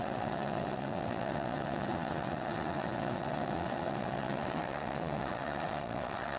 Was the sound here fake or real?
fake